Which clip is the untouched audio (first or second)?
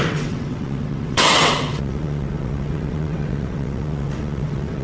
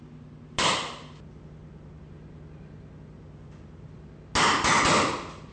second